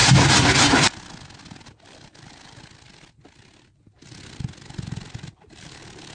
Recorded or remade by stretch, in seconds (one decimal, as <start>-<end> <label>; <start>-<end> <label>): 0.0-6.1 recorded